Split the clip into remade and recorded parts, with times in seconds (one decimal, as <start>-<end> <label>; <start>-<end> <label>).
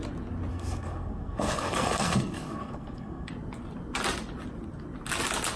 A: 0.0-0.5 recorded; 0.5-3.3 remade; 3.3-5.6 recorded